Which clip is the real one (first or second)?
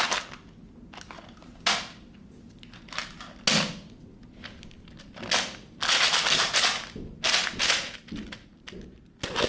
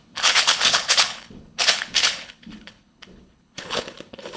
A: first